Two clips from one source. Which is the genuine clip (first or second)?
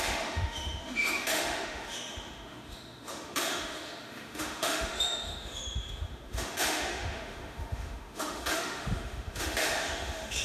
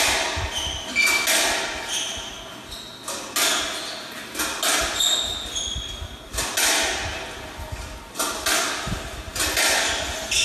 second